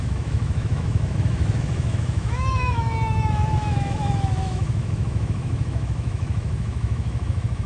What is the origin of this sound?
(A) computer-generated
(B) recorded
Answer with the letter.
A